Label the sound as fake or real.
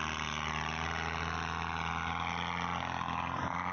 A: real